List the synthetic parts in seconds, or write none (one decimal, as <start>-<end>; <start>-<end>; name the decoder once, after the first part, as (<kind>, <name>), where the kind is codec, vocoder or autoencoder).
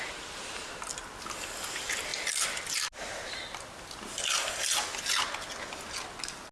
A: none